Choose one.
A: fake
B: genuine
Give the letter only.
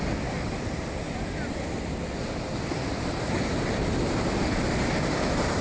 B